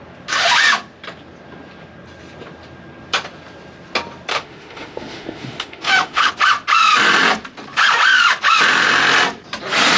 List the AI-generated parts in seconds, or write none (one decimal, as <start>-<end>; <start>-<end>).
4.3-6.3